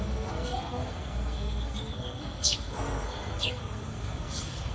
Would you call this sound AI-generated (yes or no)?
yes